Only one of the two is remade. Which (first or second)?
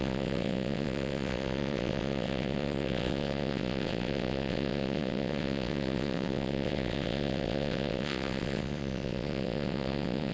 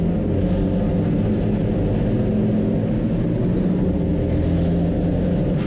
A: first